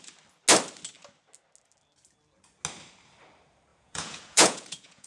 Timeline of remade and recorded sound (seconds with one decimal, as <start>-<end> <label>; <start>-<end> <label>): 0.0-3.7 recorded; 3.7-5.1 remade